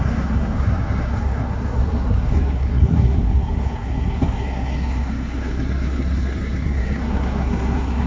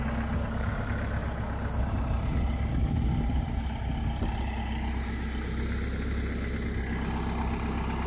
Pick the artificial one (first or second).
first